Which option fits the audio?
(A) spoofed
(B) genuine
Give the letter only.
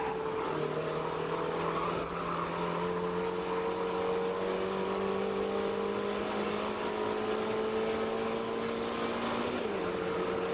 B